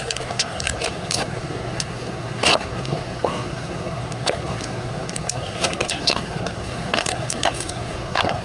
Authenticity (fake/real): fake